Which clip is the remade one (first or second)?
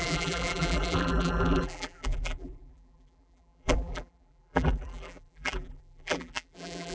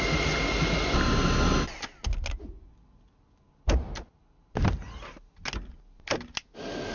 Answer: first